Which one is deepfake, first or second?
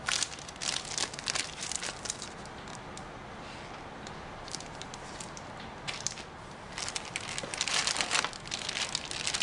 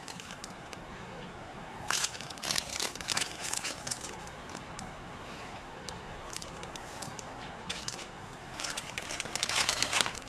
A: second